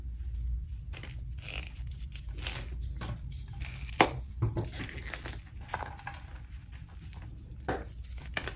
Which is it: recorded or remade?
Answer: recorded